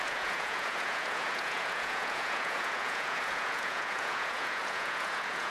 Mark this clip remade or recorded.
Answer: remade